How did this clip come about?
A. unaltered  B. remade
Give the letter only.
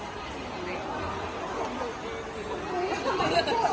A